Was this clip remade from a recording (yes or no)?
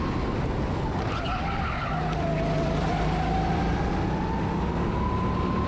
no